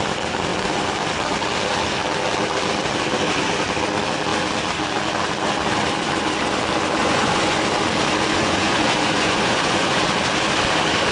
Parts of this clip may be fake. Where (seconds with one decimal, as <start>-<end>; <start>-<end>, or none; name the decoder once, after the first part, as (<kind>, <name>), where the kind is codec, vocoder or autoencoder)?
7.0-7.6 (vocoder, Vocos); 8.3-10.0